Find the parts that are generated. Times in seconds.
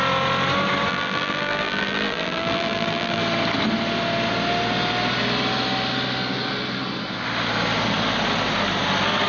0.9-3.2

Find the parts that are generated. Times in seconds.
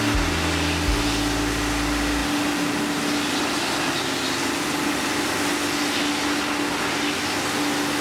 none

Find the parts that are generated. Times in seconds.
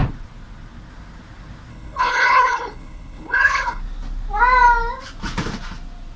1.7-3.8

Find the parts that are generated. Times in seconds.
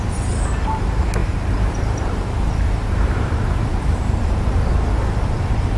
1.2-4.7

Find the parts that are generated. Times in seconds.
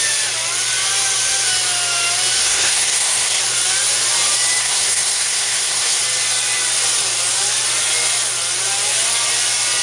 2.4-3.4; 4.6-6.0